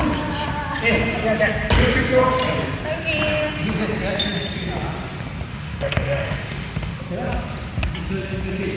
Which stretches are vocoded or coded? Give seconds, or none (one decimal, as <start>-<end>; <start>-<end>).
5.5-7.0